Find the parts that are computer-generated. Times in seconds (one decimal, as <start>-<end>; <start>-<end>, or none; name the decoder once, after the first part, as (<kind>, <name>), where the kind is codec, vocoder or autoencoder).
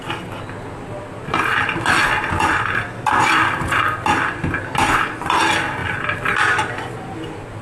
none